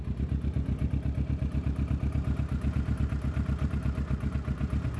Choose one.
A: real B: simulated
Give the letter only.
A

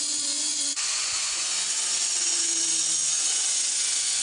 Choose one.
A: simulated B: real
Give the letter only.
A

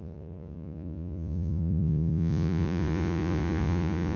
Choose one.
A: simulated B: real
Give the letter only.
A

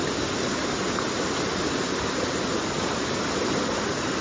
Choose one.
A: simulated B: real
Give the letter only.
B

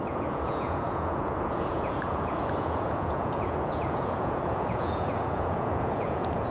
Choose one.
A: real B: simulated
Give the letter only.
B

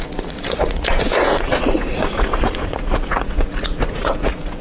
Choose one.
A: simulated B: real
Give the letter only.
A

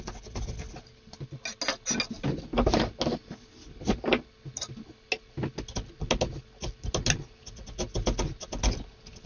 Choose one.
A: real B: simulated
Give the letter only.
A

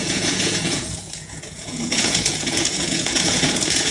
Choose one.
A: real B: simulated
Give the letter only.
B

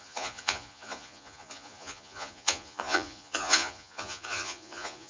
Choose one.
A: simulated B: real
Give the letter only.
A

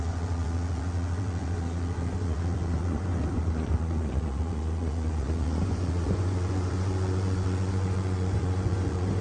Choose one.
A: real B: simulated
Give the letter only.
B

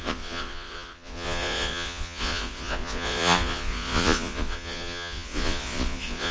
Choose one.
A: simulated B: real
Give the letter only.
A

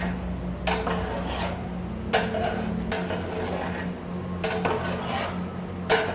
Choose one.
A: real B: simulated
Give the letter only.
A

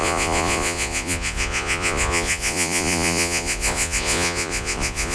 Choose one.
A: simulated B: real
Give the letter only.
A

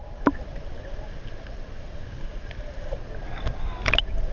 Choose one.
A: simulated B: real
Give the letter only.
B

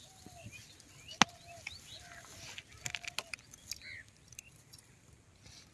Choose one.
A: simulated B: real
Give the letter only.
B